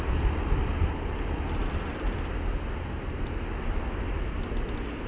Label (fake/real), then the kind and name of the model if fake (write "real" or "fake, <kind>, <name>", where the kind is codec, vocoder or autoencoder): real